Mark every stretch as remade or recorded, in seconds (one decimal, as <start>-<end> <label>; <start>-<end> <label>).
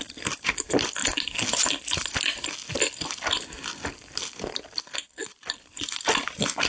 0.0-5.2 recorded; 5.2-5.8 remade; 5.8-6.7 recorded